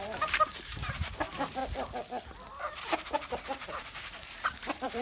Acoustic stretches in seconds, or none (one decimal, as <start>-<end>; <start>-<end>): 1.6-2.8